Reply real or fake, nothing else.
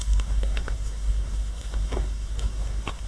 fake